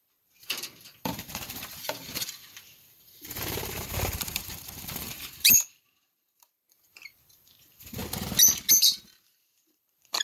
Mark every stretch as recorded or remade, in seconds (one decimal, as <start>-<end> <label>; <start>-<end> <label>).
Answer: 0.0-8.0 remade; 8.0-8.7 recorded; 8.7-10.2 remade